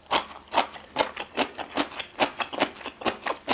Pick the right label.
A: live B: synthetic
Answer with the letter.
A